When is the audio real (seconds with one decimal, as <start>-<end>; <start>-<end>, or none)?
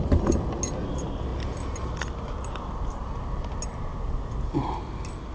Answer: 0.0-5.3